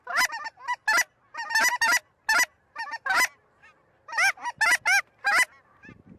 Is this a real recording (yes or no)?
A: yes